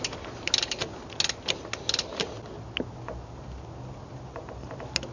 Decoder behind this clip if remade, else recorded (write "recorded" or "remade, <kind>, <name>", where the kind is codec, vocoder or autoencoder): recorded